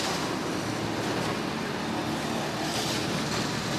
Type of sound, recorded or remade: recorded